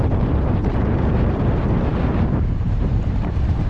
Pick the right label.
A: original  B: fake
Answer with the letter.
B